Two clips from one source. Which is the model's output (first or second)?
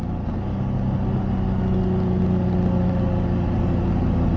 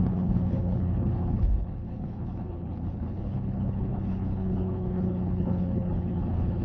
second